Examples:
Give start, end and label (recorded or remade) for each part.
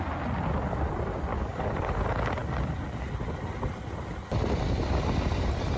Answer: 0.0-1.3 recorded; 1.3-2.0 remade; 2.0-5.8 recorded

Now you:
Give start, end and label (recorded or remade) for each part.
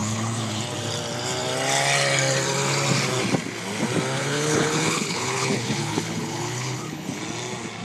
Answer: 0.0-0.6 remade; 0.6-4.2 recorded; 4.2-7.2 remade; 7.2-7.8 recorded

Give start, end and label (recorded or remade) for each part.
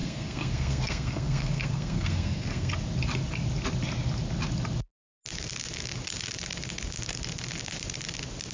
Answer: 0.0-2.7 remade; 2.7-8.5 recorded